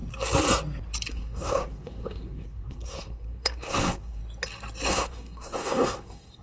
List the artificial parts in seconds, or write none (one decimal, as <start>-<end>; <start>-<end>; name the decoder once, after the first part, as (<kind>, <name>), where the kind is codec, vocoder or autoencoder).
1.1-4.2 (codec, SNAC); 4.9-6.4